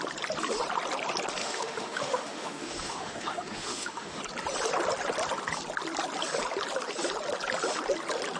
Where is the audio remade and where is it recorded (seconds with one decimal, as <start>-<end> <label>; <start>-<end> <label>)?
0.0-1.4 recorded; 1.4-4.2 remade; 4.2-8.4 recorded